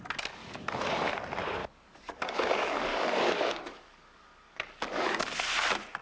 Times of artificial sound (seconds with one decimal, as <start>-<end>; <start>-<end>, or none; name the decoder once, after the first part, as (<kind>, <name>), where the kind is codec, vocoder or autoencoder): 0.4-1.1 (codec, DAC); 1.6-5.2